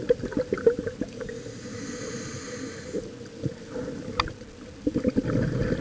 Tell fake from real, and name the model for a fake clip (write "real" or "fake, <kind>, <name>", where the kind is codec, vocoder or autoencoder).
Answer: real